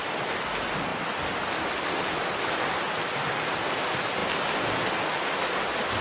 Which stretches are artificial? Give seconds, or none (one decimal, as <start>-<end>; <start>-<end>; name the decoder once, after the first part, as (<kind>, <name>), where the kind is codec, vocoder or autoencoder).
none